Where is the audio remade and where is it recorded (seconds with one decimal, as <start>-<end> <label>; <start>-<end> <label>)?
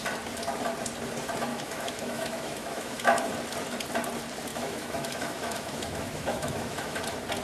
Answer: 0.0-1.5 recorded; 1.5-3.3 remade; 3.3-4.5 recorded; 4.5-7.0 remade; 7.0-7.4 recorded